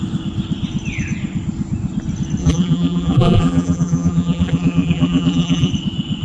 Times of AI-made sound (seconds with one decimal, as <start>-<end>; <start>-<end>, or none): 2.4-5.7